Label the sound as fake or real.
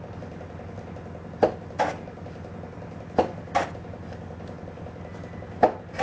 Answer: real